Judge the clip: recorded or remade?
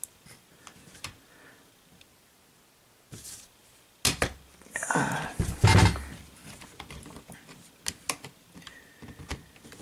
recorded